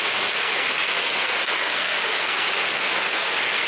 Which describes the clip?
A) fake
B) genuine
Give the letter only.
A